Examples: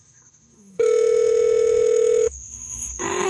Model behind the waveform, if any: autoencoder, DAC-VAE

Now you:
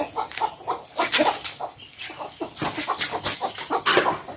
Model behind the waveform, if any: none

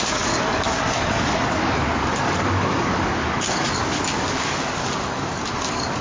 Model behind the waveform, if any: codec, DAC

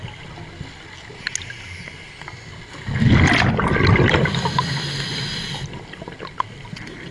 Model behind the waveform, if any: none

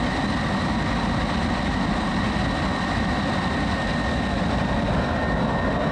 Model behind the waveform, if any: none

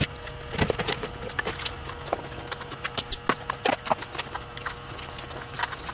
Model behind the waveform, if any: none